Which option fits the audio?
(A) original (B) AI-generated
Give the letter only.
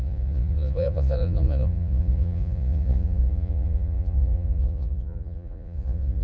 B